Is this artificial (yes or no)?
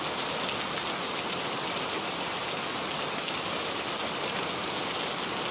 no